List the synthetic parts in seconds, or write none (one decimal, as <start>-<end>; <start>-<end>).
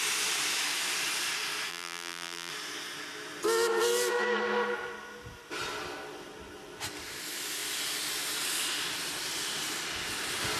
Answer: 1.7-2.5